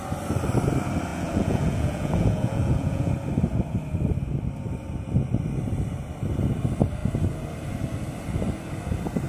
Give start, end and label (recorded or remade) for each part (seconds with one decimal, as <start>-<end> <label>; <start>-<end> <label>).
0.0-1.1 recorded; 1.1-3.1 remade; 3.1-9.3 recorded